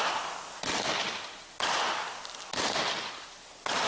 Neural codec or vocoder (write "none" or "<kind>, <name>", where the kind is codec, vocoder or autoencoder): none